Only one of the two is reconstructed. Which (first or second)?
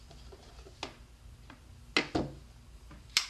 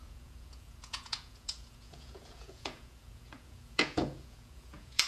second